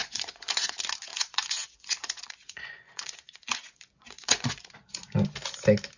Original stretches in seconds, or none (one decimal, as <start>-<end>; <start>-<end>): 0.7-1.1; 4.7-6.0